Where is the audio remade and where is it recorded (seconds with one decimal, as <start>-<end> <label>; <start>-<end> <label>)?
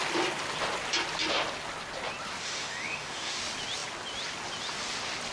0.0-2.4 recorded; 2.4-3.4 remade; 3.4-5.3 recorded